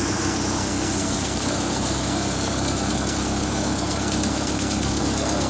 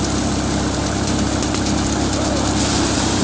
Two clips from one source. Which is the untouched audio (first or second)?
second